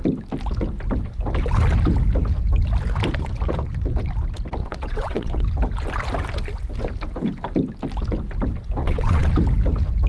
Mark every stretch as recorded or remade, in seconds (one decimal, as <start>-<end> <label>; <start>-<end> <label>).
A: 0.0-4.6 recorded; 4.6-5.4 remade; 5.4-8.8 recorded; 8.8-9.3 remade; 9.3-10.1 recorded